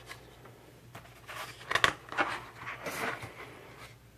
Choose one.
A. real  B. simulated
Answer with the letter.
A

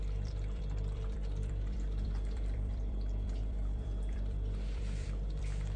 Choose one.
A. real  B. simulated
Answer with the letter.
B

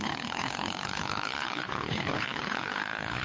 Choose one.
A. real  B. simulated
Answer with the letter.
B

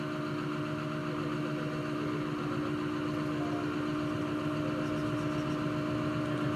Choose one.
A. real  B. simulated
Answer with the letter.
A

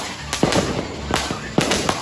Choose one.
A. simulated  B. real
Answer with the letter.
B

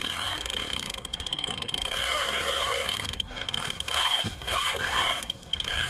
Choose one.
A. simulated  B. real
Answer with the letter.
A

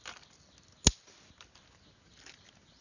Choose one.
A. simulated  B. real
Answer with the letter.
B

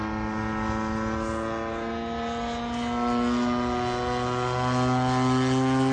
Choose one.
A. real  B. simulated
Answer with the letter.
A